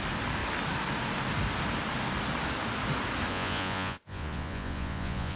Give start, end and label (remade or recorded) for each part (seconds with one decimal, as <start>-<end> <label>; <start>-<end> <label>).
0.0-3.3 recorded; 3.3-5.4 remade